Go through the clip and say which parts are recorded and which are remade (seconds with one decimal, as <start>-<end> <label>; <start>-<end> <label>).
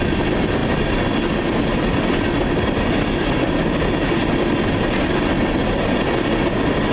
0.0-6.9 recorded